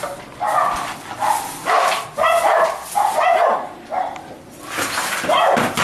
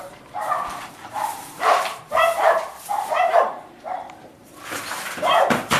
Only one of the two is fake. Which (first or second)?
second